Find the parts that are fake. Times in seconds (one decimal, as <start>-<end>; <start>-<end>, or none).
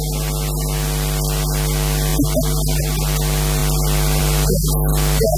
none